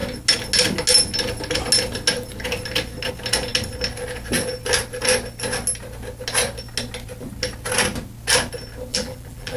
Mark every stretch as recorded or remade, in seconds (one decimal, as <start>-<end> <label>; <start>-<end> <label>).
0.0-8.9 recorded; 8.9-9.6 remade